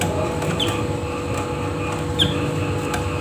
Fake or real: real